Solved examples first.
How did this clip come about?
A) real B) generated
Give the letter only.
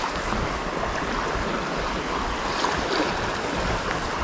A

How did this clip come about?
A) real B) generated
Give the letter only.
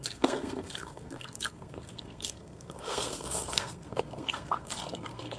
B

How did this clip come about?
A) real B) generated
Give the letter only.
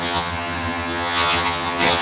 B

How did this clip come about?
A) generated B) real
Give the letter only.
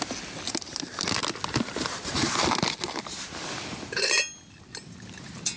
B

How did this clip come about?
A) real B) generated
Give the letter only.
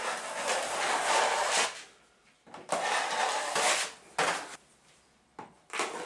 A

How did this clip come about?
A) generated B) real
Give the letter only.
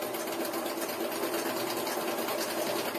B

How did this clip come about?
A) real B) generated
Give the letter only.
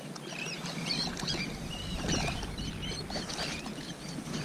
A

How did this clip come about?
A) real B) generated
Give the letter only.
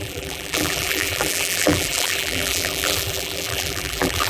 B